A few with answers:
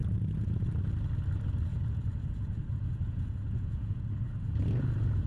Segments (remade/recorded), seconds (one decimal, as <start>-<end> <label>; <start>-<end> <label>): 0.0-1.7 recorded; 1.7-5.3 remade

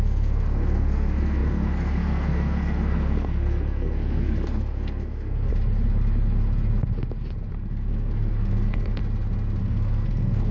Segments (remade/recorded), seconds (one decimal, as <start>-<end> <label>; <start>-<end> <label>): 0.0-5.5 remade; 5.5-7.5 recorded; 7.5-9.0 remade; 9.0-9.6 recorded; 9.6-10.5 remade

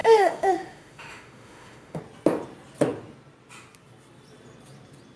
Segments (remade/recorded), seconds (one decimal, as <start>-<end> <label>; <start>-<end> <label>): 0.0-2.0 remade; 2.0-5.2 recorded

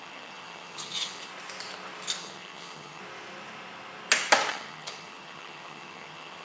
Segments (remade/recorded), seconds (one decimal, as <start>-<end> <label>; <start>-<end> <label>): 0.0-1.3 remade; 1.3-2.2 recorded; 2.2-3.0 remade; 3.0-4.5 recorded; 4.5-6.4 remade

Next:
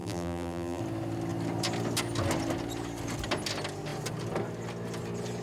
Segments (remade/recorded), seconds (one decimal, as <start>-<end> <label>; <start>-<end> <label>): 0.0-0.8 remade; 0.8-5.4 recorded